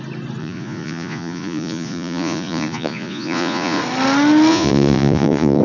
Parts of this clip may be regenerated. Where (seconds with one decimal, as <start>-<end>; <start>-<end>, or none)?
0.4-3.8; 4.5-5.6